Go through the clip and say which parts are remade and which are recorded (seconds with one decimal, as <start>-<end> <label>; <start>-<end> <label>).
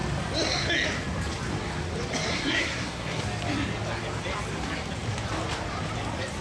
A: 0.0-2.3 recorded; 2.3-3.2 remade; 3.2-6.4 recorded